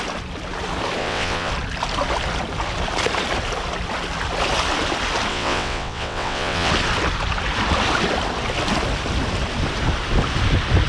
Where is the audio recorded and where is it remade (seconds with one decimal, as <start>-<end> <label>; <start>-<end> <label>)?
0.0-1.0 recorded; 1.0-1.5 remade; 1.5-5.3 recorded; 5.3-6.7 remade; 6.7-10.9 recorded